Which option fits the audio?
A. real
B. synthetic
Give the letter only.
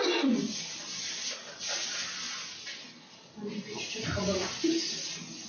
A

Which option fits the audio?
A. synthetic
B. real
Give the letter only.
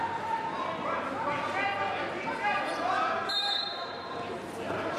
B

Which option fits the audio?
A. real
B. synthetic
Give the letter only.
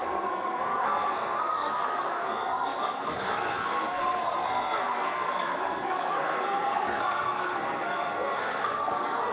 B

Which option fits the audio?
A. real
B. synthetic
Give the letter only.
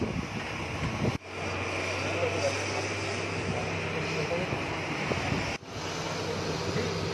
A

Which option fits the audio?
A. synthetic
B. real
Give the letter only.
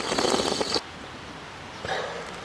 B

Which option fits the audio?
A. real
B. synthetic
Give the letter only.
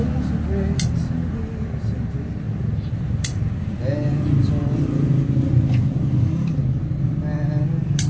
A